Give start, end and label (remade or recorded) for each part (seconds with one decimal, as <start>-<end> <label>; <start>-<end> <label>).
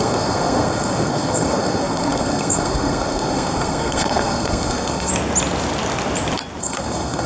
0.0-5.1 remade; 5.1-6.6 recorded; 6.6-7.3 remade